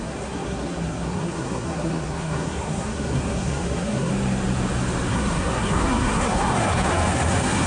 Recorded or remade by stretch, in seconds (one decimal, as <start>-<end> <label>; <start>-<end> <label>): 0.0-4.1 remade; 4.1-5.1 recorded; 5.1-7.7 remade